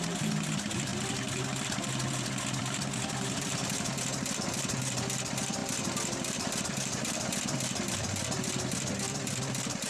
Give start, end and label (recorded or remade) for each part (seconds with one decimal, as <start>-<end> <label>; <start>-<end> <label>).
0.0-9.9 remade